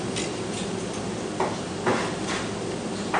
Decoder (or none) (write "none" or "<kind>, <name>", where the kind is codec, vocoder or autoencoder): none